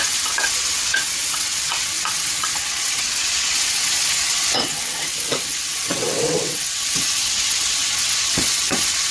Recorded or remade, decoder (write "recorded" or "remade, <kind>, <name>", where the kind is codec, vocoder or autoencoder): remade, vocoder, WaveNeXt